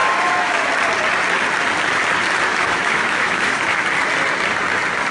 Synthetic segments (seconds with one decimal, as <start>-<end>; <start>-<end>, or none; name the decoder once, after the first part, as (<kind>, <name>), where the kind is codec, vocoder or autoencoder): 0.0-0.7 (autoencoder, DAC-VAE); 2.5-3.8